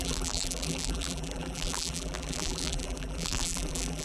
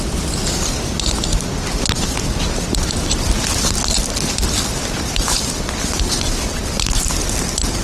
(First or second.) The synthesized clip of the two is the first